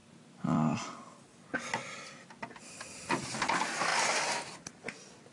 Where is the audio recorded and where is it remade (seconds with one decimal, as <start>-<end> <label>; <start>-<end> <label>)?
0.0-5.3 recorded